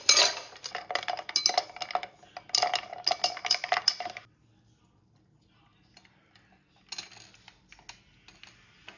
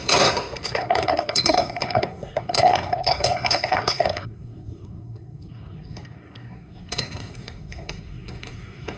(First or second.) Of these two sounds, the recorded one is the first